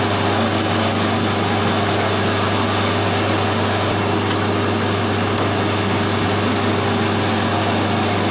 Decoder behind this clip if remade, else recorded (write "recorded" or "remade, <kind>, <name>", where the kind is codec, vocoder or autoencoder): recorded